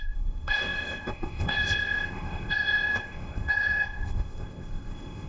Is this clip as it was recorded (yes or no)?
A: no